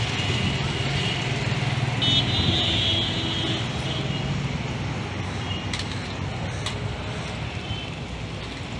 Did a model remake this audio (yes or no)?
no